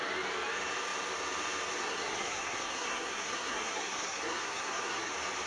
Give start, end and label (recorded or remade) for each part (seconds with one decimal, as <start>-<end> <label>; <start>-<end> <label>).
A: 0.0-1.8 recorded; 1.8-5.1 remade; 5.1-5.5 recorded